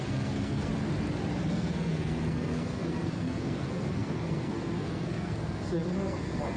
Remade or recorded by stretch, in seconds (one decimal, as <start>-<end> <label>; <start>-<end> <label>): 0.0-0.7 remade; 0.7-1.5 recorded; 1.5-6.6 remade